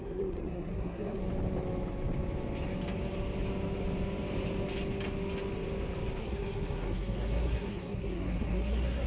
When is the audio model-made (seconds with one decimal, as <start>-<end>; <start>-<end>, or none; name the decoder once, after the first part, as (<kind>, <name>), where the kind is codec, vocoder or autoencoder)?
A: 0.0-1.2 (codec, SNAC); 6.2-9.1

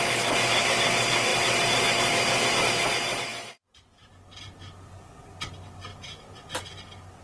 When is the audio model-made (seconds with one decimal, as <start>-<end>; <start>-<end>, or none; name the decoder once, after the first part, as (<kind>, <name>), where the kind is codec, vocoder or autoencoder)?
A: 3.3-4.1 (autoencoder, DAC-VAE)